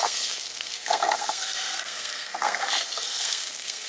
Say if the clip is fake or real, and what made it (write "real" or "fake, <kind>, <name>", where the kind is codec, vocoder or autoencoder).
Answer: fake, codec, SNAC